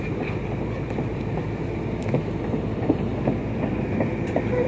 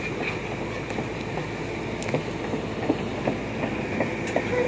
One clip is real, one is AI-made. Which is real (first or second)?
second